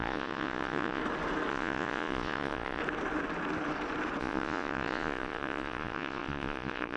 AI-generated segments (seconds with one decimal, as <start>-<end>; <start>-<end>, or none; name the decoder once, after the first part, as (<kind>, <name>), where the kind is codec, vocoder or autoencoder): 0.0-1.0 (vocoder, Vocos); 1.5-2.8; 4.2-7.0